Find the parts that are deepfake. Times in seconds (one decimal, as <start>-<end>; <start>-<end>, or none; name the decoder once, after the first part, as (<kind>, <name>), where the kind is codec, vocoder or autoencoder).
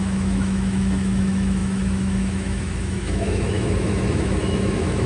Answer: 0.0-5.1 (autoencoder, DAC-VAE)